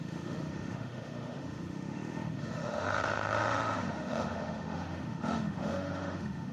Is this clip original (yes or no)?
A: no